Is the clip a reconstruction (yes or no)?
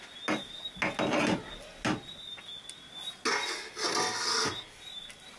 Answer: no